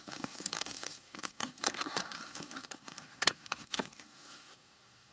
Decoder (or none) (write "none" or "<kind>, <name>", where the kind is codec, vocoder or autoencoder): codec, SNAC